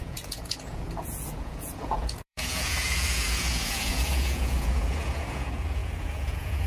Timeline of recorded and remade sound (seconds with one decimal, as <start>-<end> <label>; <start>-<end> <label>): 0.0-6.7 remade